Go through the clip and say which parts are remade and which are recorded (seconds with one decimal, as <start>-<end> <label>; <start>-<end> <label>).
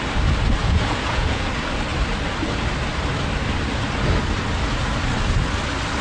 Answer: 0.0-0.6 recorded; 0.6-1.5 remade; 1.5-6.0 recorded